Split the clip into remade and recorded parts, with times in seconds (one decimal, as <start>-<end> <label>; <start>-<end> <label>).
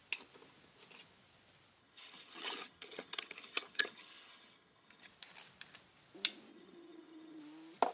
0.0-1.8 recorded; 1.8-5.1 remade; 5.1-6.5 recorded; 6.5-7.4 remade; 7.4-7.9 recorded